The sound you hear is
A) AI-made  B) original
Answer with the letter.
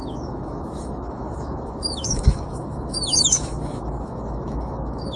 A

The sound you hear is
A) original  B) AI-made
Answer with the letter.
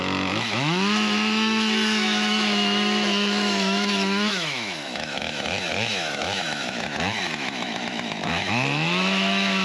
B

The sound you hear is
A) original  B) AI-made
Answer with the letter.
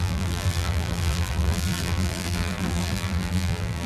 B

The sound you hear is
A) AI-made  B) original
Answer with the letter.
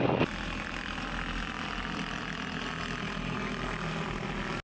B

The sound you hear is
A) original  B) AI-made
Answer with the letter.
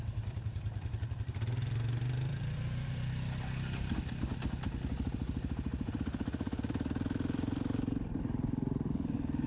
B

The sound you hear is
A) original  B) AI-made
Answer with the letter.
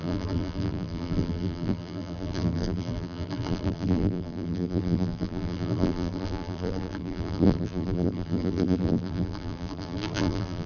B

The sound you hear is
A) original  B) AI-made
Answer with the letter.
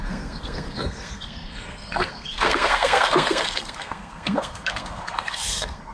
B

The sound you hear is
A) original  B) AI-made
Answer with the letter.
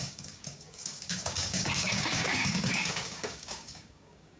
B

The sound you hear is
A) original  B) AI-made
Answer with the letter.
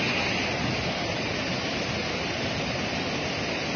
A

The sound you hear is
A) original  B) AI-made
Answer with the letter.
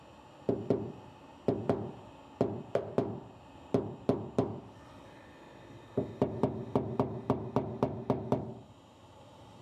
A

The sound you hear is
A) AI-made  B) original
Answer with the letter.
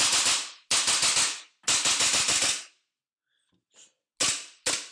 B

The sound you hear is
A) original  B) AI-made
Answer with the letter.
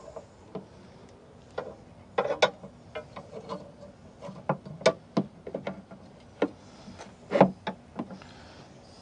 A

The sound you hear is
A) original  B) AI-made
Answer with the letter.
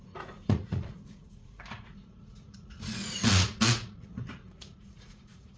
B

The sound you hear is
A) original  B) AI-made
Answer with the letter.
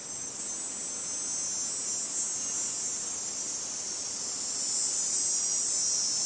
A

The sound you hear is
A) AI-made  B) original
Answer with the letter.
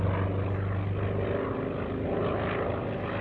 B